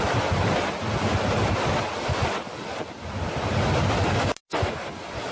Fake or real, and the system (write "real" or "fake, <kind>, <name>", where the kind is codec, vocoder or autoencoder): real